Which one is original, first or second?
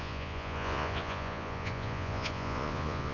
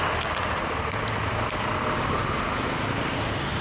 second